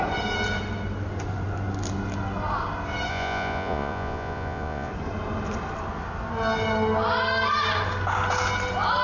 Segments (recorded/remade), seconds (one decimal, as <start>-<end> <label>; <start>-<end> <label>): 0.0-3.1 recorded; 3.1-4.9 remade; 4.9-9.0 recorded